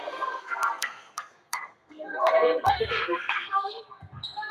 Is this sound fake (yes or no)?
yes